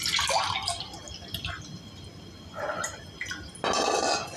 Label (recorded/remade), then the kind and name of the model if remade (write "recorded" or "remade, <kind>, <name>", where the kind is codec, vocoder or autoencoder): recorded